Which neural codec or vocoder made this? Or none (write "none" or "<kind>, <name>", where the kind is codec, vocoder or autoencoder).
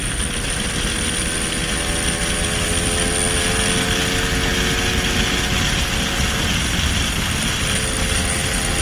none